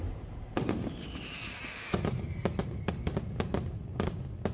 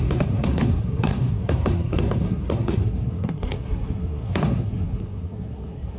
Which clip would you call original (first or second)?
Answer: first